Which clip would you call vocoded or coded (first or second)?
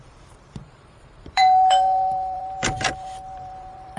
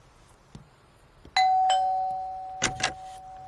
first